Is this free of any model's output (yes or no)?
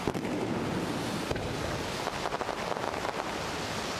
yes